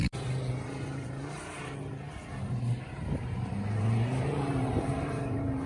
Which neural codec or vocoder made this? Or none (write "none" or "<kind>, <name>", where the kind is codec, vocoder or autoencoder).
vocoder, BigVGAN v2